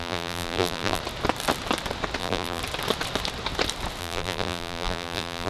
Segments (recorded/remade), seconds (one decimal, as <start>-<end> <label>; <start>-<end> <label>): 0.0-1.0 remade; 1.0-2.2 recorded; 2.2-2.6 remade; 2.6-4.0 recorded; 4.0-5.5 remade